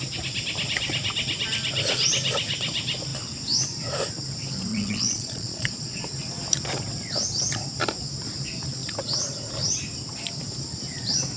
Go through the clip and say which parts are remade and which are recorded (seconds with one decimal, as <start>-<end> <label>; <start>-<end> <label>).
0.0-4.7 recorded; 4.7-6.0 remade; 6.0-11.4 recorded